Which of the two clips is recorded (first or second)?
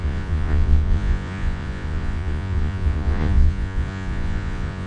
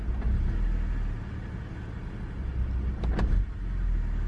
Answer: second